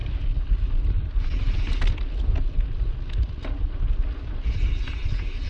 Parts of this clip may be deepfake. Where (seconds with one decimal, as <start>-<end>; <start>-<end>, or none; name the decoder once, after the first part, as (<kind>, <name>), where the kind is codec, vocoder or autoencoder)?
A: none